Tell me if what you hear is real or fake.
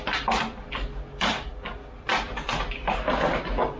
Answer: fake